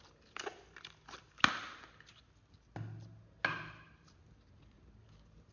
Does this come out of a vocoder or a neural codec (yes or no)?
no